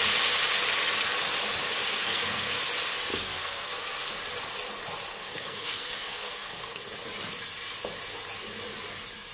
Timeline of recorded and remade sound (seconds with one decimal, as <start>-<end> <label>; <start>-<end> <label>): 0.0-2.0 recorded; 2.0-2.6 remade; 2.6-3.1 recorded; 3.1-3.7 remade; 3.7-5.1 recorded; 5.1-6.8 remade; 6.8-9.3 recorded